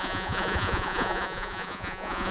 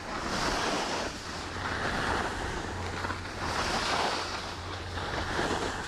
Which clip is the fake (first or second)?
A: first